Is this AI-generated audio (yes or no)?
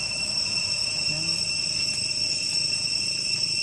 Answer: no